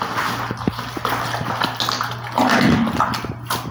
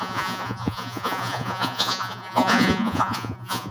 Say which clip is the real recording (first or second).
first